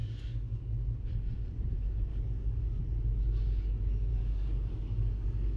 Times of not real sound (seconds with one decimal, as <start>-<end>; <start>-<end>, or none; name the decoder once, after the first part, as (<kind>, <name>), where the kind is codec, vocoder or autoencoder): 0.0-0.6 (codec, DAC); 2.1-2.8; 4.1-5.6